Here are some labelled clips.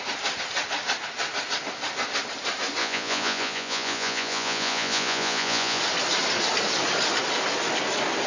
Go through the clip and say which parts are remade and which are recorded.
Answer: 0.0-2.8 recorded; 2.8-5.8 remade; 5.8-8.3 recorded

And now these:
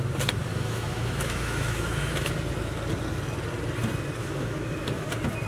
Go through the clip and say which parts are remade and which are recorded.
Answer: 0.0-0.5 recorded; 0.5-2.3 remade; 2.3-4.2 recorded; 4.2-5.1 remade; 5.1-5.5 recorded

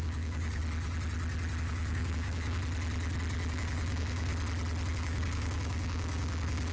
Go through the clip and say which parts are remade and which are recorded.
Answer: 0.0-0.6 remade; 0.6-1.6 recorded; 1.6-2.6 remade; 2.6-3.5 recorded; 3.5-4.3 remade; 4.3-4.9 recorded; 4.9-6.7 remade

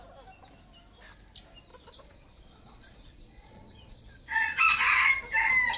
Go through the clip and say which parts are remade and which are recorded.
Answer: 0.0-1.7 recorded; 1.7-5.1 remade; 5.1-5.8 recorded

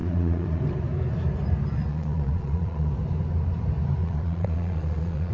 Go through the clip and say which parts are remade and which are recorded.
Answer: 0.0-0.6 remade; 0.6-1.9 recorded; 1.9-2.9 remade; 2.9-4.0 recorded; 4.0-5.3 remade

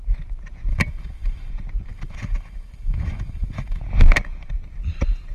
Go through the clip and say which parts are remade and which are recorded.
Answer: 0.0-0.7 recorded; 0.7-1.5 remade; 1.5-1.9 recorded; 1.9-3.8 remade; 3.8-5.3 recorded